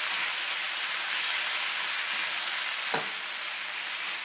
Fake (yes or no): no